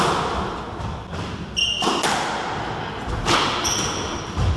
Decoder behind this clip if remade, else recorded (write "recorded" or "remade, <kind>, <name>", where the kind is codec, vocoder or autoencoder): recorded